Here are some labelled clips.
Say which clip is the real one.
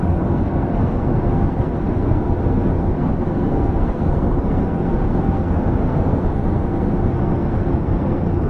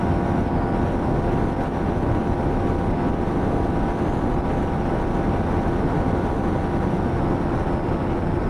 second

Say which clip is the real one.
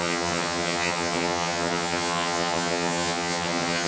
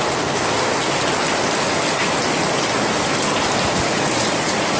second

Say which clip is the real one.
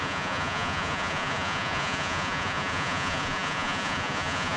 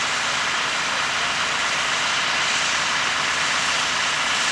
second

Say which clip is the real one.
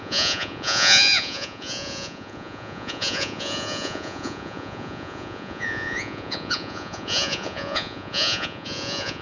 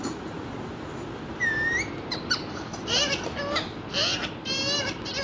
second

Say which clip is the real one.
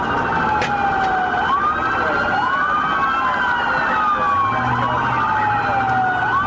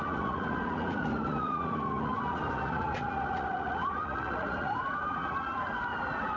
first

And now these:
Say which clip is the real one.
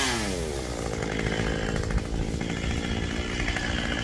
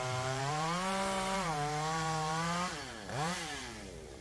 first